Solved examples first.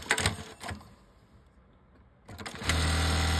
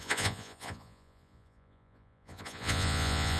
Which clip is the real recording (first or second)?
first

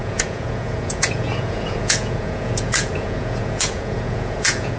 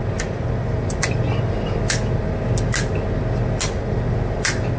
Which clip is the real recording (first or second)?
second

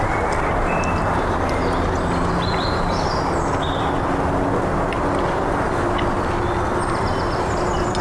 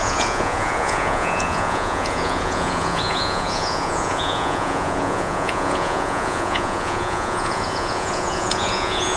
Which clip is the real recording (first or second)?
first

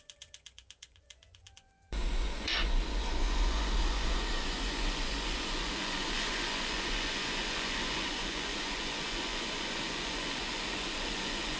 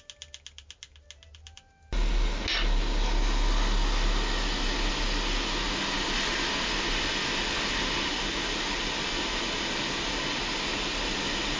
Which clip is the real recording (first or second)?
second